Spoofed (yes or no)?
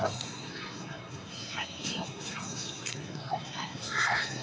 yes